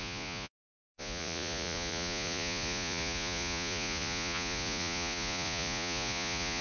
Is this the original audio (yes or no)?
no